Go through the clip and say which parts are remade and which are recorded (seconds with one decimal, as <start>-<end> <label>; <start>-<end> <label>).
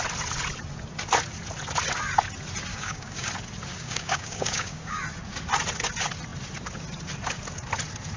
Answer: 0.0-2.7 recorded; 2.7-3.3 remade; 3.3-3.7 recorded; 3.7-5.0 remade; 5.0-8.2 recorded